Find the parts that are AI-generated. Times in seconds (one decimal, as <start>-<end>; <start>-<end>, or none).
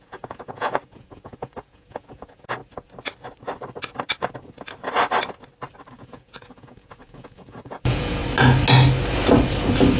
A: 0.0-2.6; 5.9-8.2